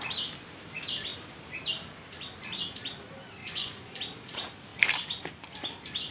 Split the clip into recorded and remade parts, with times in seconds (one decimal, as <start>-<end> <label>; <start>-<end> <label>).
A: 0.0-3.4 recorded; 3.4-4.0 remade; 4.0-6.1 recorded